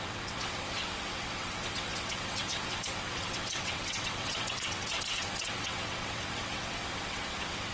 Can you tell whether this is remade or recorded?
remade